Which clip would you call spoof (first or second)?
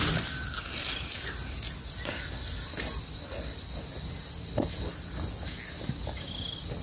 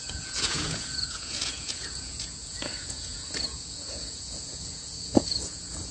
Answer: second